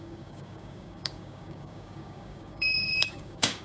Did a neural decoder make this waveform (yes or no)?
yes